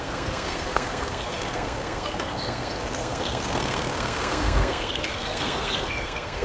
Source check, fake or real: fake